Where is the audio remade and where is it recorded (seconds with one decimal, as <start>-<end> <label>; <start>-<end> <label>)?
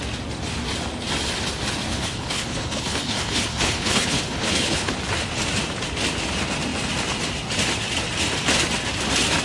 0.0-1.9 recorded; 1.9-5.0 remade; 5.0-9.4 recorded